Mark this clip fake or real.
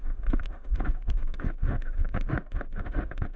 fake